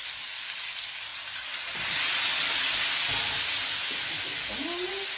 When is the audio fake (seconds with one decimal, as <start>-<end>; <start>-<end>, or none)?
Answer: none